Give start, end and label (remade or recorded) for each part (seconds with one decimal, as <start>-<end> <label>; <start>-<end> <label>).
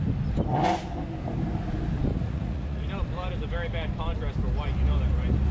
0.0-2.1 recorded; 2.1-2.9 remade; 2.9-5.5 recorded